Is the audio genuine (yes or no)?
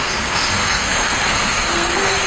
no